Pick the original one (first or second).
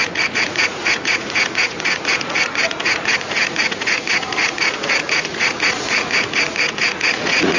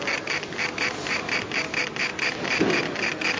second